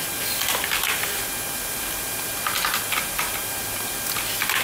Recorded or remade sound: recorded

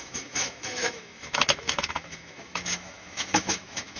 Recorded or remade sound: remade